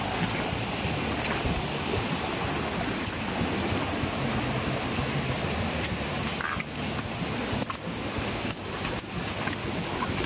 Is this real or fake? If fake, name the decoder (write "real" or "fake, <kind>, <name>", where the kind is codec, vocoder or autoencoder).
real